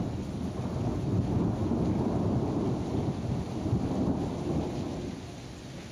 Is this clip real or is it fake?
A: real